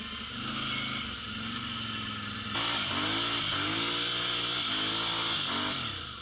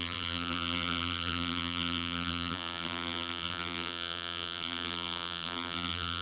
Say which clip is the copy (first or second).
second